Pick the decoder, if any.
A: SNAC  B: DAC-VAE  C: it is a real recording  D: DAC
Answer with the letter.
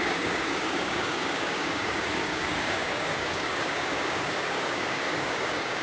D